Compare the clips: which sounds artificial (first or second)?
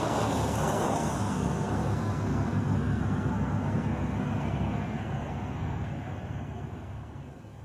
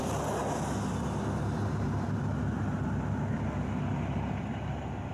first